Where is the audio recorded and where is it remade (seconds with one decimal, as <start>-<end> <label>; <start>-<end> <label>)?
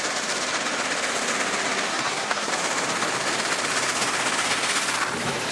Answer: 0.0-1.9 recorded; 1.9-2.5 remade; 2.5-5.5 recorded